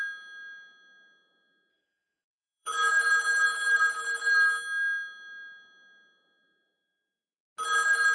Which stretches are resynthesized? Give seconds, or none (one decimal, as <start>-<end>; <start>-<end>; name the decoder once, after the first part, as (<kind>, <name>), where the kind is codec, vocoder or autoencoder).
1.7-2.9 (codec, DAC)